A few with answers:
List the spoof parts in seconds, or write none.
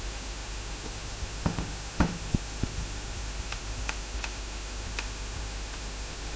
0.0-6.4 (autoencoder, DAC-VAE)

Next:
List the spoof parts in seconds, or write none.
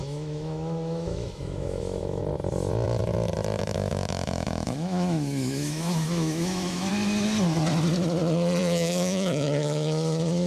0.0-2.2 (autoencoder, DAC-VAE); 3.6-6.9; 8.6-10.5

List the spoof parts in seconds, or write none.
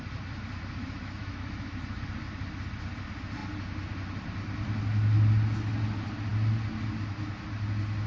0.8-1.8 (autoencoder, DAC-VAE)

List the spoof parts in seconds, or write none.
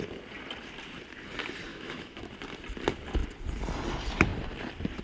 1.7-2.3 (autoencoder, DAC-VAE)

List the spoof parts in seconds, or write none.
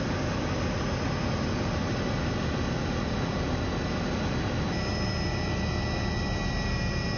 none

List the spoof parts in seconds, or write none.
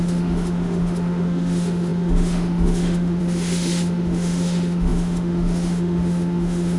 0.0-6.8 (autoencoder, DAC-VAE)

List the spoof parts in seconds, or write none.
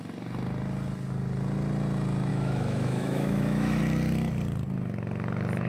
2.3-3.8 (autoencoder, DAC-VAE)